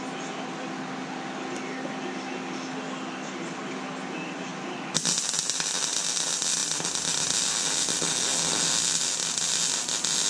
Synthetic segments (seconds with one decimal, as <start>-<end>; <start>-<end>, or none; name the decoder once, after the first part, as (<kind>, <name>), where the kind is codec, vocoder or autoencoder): none